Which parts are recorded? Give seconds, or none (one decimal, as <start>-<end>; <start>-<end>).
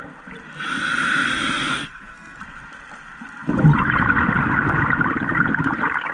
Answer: 0.0-1.7; 2.4-6.1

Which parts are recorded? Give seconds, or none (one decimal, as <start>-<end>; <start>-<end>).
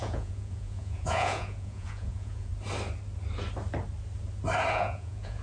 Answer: 2.5-4.7